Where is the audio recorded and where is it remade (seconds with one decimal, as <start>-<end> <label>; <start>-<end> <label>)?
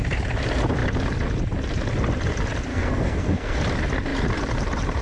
0.0-2.7 recorded; 2.7-3.6 remade; 3.6-5.0 recorded